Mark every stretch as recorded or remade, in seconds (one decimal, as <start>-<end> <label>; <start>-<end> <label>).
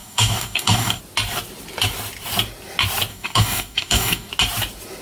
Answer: 0.0-1.0 remade; 1.0-3.1 recorded; 3.1-4.3 remade; 4.3-5.0 recorded